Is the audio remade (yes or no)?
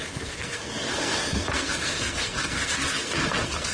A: yes